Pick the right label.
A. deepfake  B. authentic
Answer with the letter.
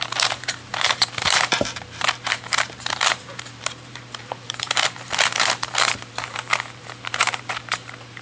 A